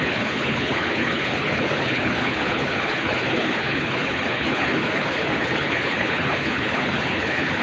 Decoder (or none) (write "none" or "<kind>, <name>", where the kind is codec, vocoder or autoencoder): codec, HILCodec